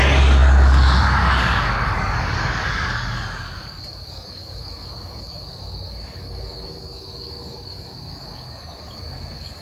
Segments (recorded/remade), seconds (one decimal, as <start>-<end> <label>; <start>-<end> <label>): 0.0-9.6 remade